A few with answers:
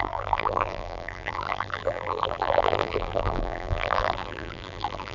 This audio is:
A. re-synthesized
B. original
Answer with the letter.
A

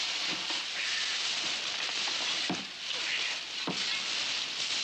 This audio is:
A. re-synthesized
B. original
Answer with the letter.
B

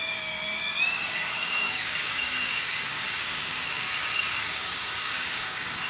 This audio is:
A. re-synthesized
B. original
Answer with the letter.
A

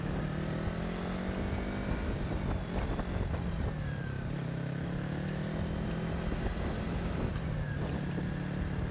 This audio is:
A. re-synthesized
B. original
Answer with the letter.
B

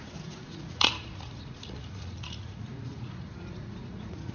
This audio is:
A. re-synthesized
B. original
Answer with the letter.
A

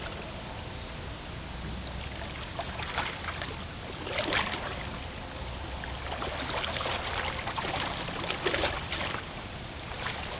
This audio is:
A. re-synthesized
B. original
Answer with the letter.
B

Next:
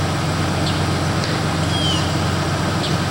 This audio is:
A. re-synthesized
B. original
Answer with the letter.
B